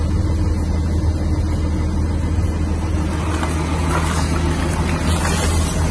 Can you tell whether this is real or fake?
real